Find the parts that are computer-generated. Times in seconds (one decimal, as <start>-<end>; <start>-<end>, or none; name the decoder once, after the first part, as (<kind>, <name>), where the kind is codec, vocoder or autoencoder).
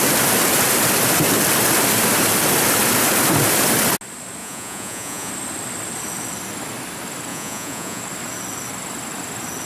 4.4-5.3 (vocoder, Vocos); 7.3-8.0